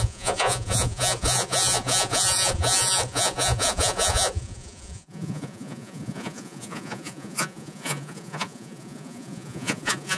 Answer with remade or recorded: remade